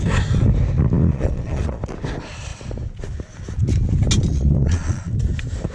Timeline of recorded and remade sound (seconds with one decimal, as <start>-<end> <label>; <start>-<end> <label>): 0.0-1.0 recorded; 1.0-1.8 remade; 1.8-4.3 recorded; 4.3-5.1 remade; 5.1-5.7 recorded